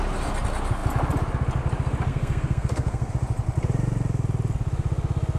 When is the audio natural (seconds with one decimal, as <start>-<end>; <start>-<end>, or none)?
0.0-2.1; 3.1-5.4